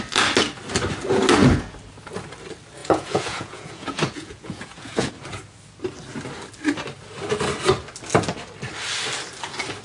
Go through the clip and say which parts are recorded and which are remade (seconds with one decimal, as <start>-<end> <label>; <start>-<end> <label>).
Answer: 0.0-2.8 recorded; 2.8-5.1 remade; 5.1-9.8 recorded